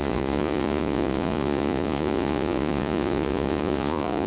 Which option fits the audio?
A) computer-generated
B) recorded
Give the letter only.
A